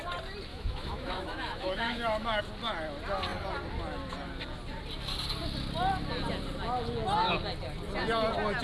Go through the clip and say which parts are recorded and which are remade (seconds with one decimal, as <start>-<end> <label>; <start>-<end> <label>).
0.0-0.5 recorded; 0.5-2.4 remade; 2.4-8.6 recorded